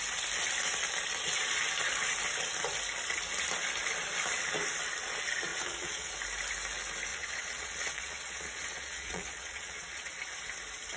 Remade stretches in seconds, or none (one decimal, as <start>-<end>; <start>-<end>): 5.5-6.1; 7.1-10.1